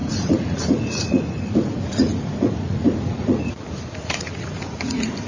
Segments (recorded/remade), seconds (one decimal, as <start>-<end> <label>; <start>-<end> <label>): 0.0-5.3 remade